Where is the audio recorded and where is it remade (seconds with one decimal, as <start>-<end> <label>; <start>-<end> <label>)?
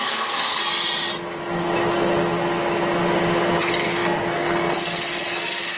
0.0-0.6 remade; 0.6-3.6 recorded; 3.6-5.8 remade